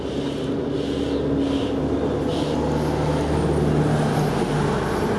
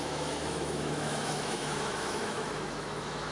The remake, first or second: second